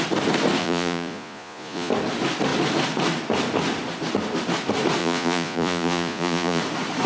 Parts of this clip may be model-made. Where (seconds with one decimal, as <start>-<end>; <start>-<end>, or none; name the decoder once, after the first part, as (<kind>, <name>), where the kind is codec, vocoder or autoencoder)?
0.6-1.9 (vocoder, Vocos); 5.0-6.6